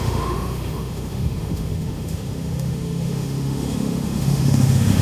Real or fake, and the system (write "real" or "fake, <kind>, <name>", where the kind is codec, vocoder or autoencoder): fake, autoencoder, DAC-VAE